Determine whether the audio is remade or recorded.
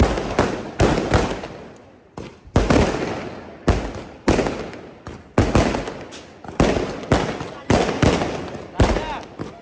recorded